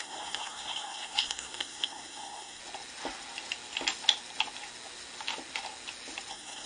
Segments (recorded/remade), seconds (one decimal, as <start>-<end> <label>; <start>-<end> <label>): 0.0-2.6 remade; 2.6-6.3 recorded; 6.3-6.7 remade